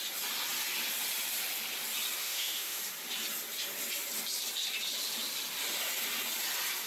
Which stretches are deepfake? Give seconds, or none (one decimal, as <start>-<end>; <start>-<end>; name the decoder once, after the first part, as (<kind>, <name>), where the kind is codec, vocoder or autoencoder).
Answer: 2.2-2.8 (autoencoder, DAC-VAE)